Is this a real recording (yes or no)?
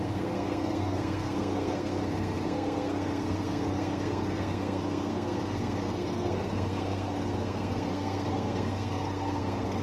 no